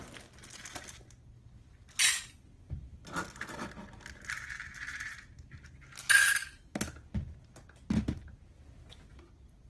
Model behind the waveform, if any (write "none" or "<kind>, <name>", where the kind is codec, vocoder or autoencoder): none